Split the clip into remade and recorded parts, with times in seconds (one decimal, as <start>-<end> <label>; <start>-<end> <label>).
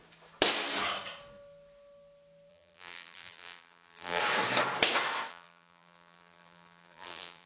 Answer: 0.0-2.5 recorded; 2.5-4.2 remade; 4.2-5.3 recorded; 5.3-7.5 remade